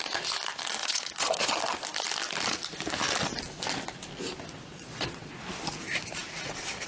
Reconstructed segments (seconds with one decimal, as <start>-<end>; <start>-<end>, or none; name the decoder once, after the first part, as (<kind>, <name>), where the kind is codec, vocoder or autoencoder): 0.8-1.5 (vocoder, Vocos); 4.7-5.4